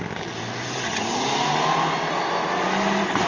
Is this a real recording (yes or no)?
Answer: yes